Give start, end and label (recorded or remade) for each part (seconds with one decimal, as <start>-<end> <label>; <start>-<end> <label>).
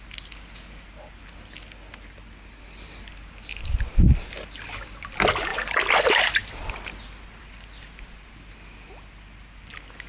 0.0-3.5 recorded; 3.5-4.0 remade; 4.0-10.1 recorded